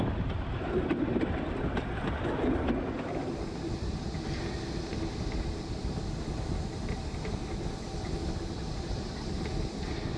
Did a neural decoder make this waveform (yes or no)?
no